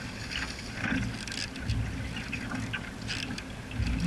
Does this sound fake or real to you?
real